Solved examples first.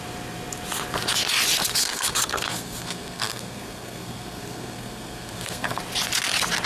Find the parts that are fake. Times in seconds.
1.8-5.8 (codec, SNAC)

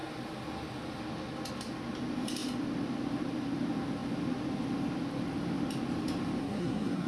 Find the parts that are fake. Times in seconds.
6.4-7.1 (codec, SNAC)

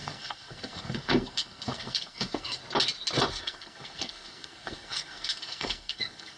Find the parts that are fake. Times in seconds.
0.0-2.6 (codec, SNAC); 3.3-6.4

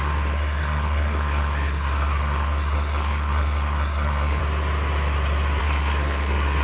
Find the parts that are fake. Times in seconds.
0.0-4.4 (codec, SNAC); 5.6-6.6

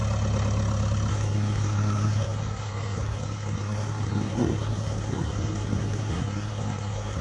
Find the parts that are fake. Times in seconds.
1.1-7.2 (codec, SNAC)

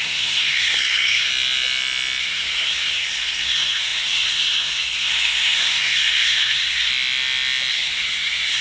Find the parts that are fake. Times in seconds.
0.0-1.3 (codec, SNAC); 2.2-6.9; 7.7-8.6

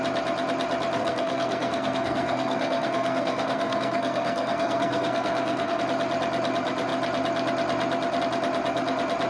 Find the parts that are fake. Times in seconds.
1.0-5.8 (codec, SNAC)